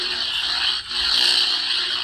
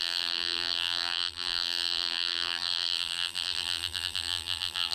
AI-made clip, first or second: second